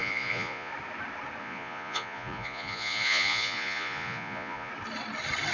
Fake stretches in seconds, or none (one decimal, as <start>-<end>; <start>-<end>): 0.0-0.7; 1.4-4.7